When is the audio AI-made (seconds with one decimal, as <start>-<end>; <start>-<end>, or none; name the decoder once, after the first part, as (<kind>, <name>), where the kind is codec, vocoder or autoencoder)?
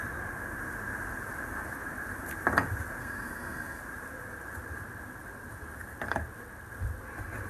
3.0-3.8 (codec, SNAC)